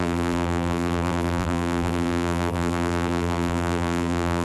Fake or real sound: fake